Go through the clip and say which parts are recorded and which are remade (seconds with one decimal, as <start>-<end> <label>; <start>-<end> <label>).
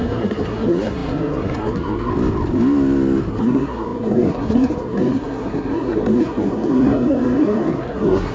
0.0-2.1 remade; 2.1-3.3 recorded; 3.3-8.3 remade